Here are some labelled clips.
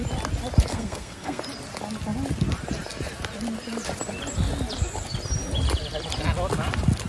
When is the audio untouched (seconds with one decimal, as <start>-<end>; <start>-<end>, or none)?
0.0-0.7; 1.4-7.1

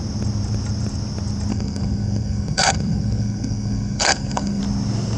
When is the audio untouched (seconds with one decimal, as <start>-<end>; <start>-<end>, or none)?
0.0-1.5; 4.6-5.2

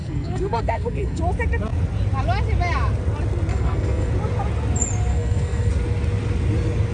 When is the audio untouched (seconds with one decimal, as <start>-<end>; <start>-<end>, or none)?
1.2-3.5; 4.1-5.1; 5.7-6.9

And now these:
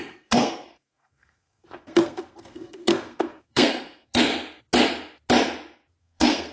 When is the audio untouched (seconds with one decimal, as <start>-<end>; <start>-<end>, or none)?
4.3-6.0